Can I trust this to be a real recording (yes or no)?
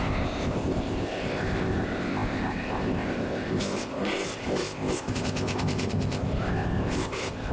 no